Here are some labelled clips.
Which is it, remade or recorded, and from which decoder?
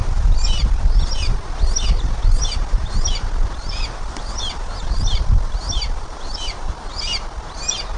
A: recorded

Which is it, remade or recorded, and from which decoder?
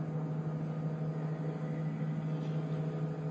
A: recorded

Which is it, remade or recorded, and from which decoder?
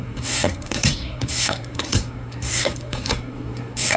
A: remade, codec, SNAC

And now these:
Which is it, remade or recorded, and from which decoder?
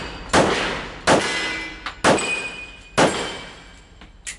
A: recorded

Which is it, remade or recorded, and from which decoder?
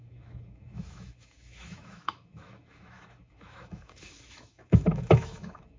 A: remade, autoencoder, DAC-VAE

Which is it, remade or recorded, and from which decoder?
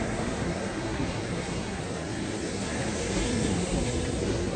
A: remade, codec, SNAC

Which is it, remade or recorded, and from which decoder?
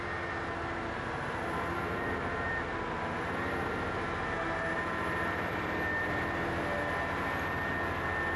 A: recorded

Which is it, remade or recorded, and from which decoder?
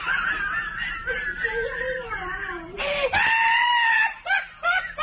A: recorded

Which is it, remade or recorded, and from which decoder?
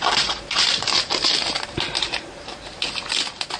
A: recorded